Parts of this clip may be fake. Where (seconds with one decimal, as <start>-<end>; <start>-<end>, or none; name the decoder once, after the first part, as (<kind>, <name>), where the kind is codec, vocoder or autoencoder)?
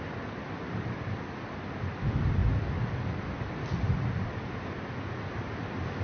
none